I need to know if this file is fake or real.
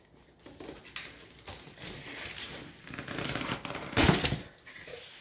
real